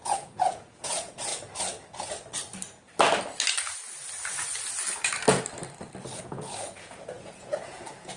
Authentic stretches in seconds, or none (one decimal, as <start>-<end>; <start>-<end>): 1.3-6.2